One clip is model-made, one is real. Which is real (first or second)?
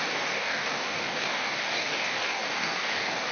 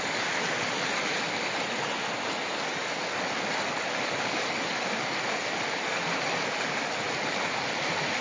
second